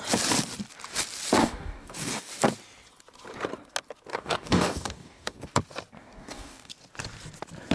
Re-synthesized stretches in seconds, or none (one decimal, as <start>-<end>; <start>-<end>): 1.4-2.3; 4.1-5.6; 6.0-6.7

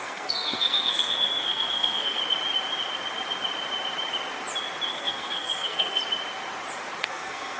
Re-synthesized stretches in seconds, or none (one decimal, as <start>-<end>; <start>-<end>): 0.0-2.2; 4.9-6.0; 7.0-7.6

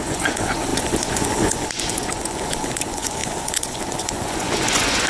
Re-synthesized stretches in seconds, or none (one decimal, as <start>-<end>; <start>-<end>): 0.0-5.1

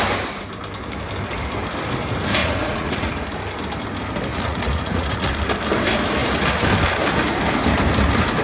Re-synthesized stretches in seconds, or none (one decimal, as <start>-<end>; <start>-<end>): 2.4-3.1; 4.3-5.3

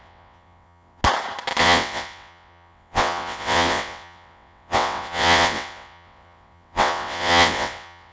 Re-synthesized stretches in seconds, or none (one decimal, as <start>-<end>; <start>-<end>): 0.0-1.0; 1.6-8.1

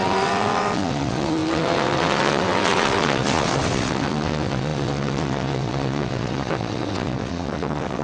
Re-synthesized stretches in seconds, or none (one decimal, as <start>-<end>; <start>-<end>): 0.0-8.0

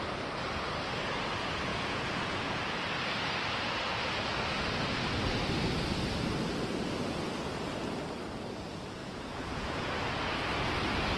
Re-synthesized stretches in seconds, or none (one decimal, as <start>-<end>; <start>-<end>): 1.7-2.6; 9.0-10.0